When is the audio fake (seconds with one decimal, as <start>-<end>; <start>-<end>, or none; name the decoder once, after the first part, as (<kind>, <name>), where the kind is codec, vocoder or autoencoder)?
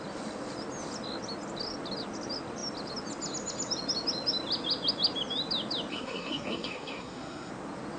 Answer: 5.9-7.5 (codec, SNAC)